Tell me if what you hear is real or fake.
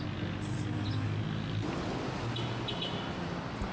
real